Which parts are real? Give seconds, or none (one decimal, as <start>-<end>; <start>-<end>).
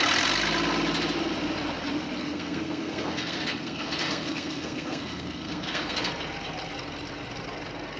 0.0-2.2; 6.1-8.0